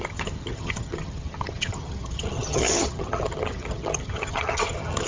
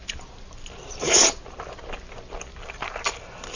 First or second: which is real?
second